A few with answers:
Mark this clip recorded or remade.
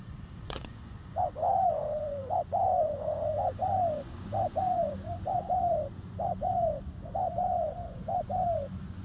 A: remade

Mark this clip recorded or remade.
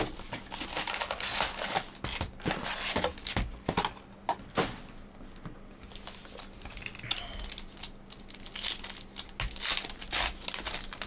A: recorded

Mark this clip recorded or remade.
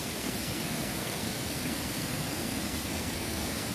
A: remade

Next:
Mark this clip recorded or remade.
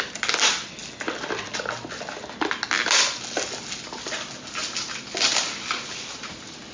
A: recorded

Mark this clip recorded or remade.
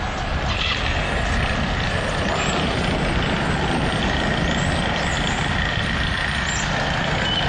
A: recorded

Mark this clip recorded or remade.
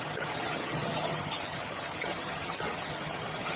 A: remade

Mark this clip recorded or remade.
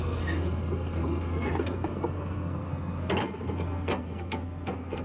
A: remade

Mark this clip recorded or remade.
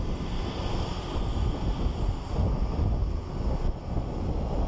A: recorded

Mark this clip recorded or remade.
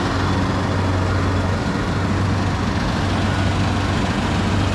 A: recorded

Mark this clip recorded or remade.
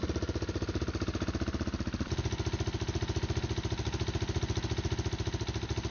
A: recorded